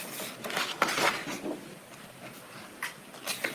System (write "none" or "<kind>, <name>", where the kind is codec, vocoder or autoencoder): none